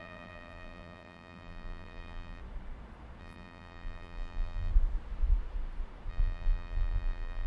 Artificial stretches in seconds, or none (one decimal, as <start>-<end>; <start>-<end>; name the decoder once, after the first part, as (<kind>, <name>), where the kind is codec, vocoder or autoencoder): 0.0-2.4 (vocoder, BigVGAN v2); 3.2-4.7; 6.1-7.5